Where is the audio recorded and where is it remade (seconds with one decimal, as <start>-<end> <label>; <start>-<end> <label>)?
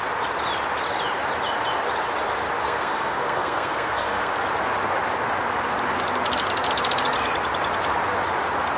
0.0-2.6 recorded; 2.6-4.3 remade; 4.3-8.8 recorded